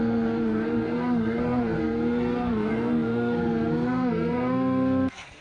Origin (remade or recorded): remade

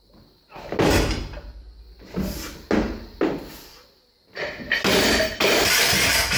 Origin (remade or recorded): recorded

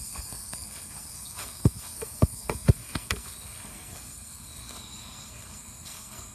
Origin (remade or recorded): remade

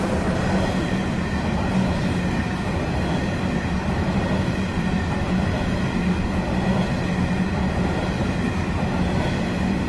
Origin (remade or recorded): recorded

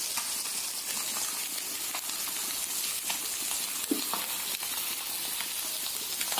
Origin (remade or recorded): recorded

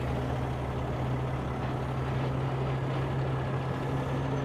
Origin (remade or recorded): recorded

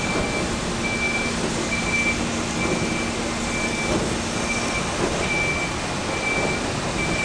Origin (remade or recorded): recorded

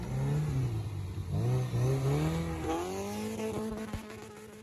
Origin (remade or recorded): recorded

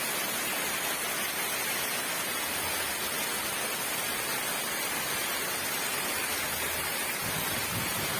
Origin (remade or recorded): recorded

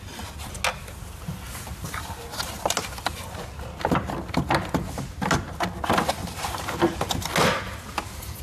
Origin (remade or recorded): recorded